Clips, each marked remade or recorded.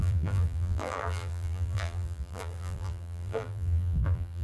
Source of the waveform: remade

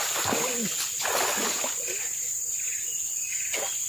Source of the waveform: recorded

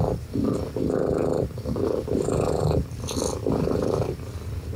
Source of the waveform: remade